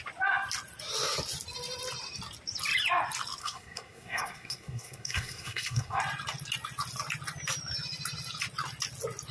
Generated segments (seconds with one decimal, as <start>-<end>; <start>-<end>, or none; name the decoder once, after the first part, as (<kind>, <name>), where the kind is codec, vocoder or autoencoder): 3.4-6.0 (codec, SNAC)